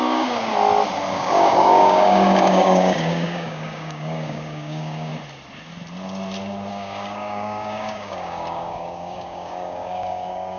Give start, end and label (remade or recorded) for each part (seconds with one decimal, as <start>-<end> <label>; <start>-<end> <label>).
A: 0.0-0.5 remade; 0.5-1.1 recorded; 1.1-5.1 remade; 5.1-6.7 recorded; 6.7-10.6 remade